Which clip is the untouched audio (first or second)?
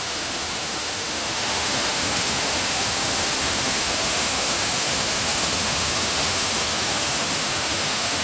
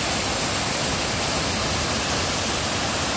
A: second